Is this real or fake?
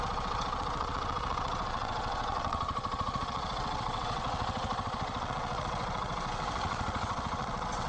fake